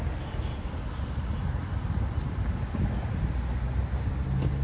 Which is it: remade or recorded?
recorded